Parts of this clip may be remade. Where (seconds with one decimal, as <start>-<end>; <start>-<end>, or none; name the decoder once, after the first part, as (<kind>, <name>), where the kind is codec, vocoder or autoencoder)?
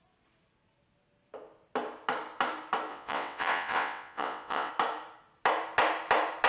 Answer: 2.9-4.7 (vocoder, WaveNeXt)